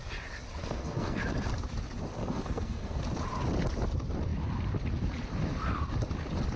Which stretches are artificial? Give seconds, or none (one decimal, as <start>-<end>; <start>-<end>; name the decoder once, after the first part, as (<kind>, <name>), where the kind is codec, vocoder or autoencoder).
0.6-1.2 (codec, SNAC); 2.2-3.0